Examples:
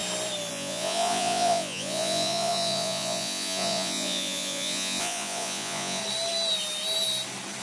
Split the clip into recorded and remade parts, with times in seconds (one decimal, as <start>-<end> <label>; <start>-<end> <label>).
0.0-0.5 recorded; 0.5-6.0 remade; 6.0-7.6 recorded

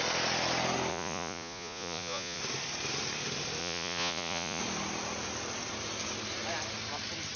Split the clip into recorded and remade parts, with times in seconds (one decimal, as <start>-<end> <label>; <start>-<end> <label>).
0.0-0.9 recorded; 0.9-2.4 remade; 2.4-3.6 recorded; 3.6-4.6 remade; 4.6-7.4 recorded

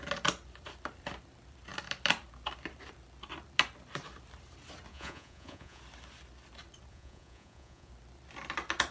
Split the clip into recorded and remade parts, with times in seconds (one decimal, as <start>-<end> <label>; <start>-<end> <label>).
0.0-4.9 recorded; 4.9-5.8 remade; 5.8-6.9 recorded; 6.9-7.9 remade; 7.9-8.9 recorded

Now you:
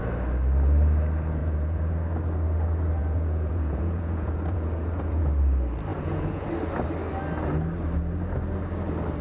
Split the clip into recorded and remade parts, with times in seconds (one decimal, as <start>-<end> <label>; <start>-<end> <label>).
0.0-1.4 recorded; 1.4-1.9 remade; 1.9-3.0 recorded; 3.0-5.2 remade; 5.2-5.9 recorded; 5.9-6.5 remade; 6.5-9.2 recorded

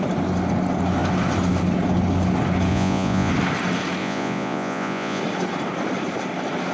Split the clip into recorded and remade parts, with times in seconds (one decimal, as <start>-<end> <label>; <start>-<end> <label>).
0.0-2.7 recorded; 2.7-3.3 remade; 3.3-4.0 recorded; 4.0-5.2 remade; 5.2-6.7 recorded

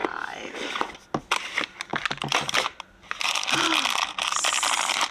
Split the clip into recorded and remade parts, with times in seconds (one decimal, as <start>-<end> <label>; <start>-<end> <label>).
0.0-5.1 recorded